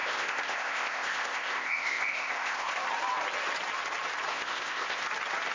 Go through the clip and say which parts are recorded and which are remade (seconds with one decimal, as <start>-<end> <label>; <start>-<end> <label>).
0.0-2.7 remade; 2.7-4.3 recorded; 4.3-5.0 remade; 5.0-5.5 recorded